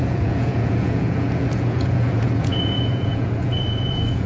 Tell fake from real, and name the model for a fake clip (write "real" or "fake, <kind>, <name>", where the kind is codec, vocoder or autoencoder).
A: fake, vocoder, Vocos